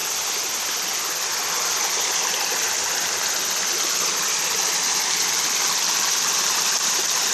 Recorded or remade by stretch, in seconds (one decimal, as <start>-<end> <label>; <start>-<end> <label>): 0.0-7.3 recorded